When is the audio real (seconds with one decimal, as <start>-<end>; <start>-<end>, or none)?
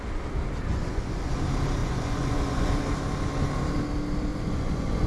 0.0-0.7; 1.3-1.8; 2.8-4.3